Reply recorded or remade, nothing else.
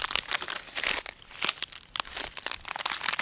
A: recorded